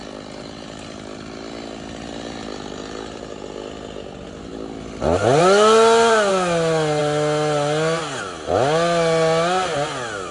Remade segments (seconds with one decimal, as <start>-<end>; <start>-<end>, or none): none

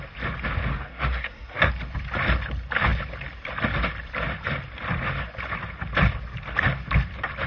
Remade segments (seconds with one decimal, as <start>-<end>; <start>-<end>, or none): 0.7-1.7

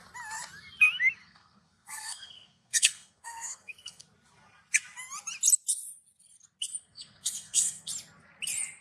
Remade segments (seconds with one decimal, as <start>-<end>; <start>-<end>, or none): 1.2-4.0; 6.8-7.9